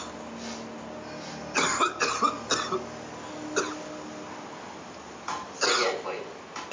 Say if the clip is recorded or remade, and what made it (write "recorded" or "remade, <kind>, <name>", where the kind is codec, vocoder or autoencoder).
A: recorded